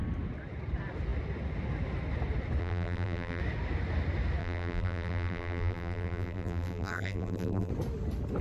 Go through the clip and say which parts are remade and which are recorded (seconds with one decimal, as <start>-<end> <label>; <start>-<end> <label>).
0.0-2.6 recorded; 2.6-3.4 remade; 3.4-4.4 recorded; 4.4-7.7 remade; 7.7-8.4 recorded